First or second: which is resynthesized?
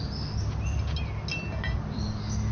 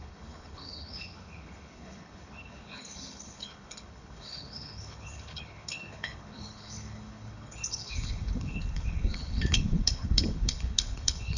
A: second